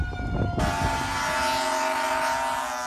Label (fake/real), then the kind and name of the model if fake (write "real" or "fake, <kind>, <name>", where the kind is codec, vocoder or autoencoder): real